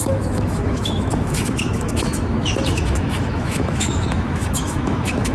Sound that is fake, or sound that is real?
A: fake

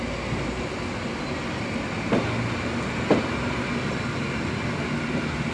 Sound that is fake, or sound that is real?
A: real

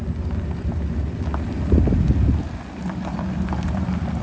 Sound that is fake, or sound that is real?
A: real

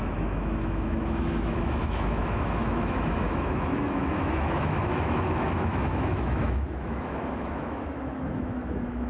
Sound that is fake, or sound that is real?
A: fake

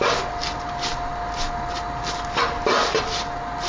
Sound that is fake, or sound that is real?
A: real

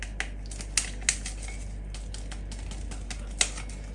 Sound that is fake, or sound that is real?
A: real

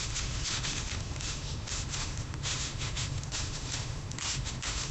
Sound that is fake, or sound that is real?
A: fake